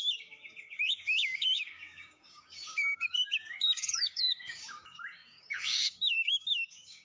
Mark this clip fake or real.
fake